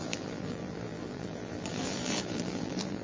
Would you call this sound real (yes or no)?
no